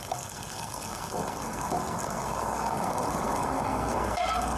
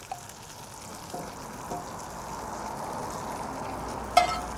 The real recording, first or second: second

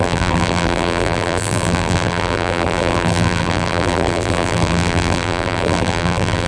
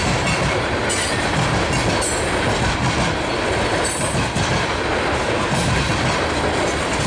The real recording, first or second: second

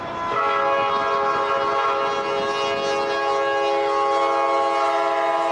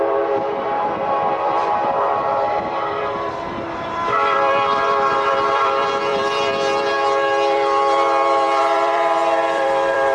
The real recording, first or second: first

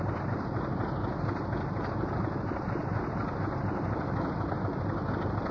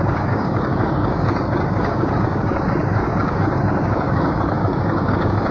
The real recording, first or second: first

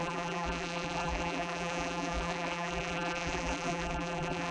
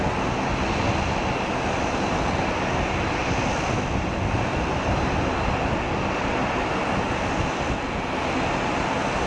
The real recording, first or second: second